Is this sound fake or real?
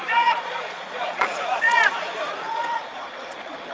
fake